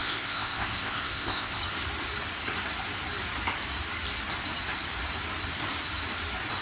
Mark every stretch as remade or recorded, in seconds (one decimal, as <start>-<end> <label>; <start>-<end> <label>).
0.0-1.6 remade; 1.6-6.6 recorded